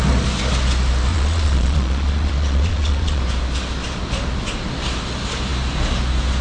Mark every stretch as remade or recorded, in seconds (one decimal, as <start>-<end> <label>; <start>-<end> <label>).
0.0-1.1 recorded; 1.1-3.2 remade; 3.2-6.4 recorded